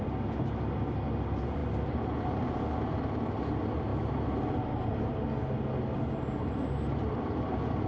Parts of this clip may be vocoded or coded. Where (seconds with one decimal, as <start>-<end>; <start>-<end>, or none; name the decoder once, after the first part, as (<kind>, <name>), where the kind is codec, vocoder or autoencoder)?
none